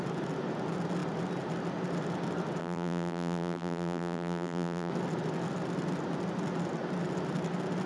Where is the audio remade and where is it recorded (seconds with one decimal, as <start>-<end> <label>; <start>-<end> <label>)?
0.0-2.6 recorded; 2.6-4.9 remade; 4.9-7.9 recorded